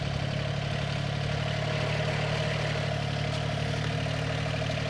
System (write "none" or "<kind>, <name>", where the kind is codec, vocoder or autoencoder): none